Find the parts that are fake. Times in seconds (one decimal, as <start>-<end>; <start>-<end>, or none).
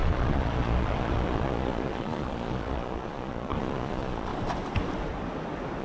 0.0-4.3